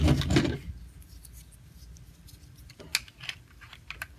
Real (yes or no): yes